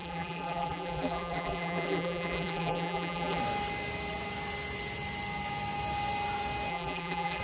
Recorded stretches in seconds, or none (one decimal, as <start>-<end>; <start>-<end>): 3.4-6.7